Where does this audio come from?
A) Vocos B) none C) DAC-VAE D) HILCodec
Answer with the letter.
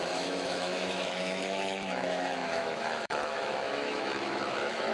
C